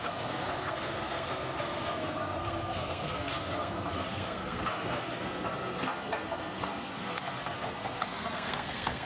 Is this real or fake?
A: fake